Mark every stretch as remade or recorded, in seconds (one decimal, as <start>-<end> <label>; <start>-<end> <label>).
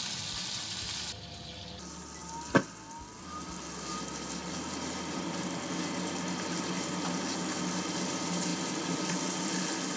0.0-8.5 recorded; 8.5-9.5 remade; 9.5-10.0 recorded